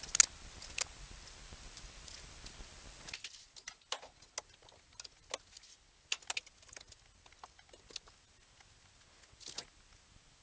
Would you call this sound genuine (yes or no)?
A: yes